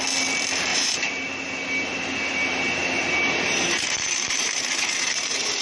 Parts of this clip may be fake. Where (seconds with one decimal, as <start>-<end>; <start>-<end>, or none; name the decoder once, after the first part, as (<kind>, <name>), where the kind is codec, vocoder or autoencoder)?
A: 0.7-1.4 (vocoder, BigVGAN v2); 2.8-5.6